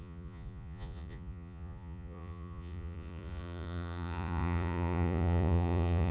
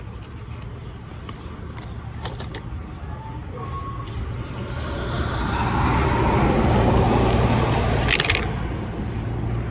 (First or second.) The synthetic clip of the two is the first